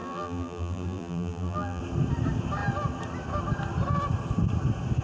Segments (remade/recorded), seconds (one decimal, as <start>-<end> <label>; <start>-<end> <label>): 0.0-1.8 remade; 1.8-5.0 recorded